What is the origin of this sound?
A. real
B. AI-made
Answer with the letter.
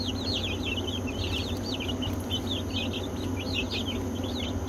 A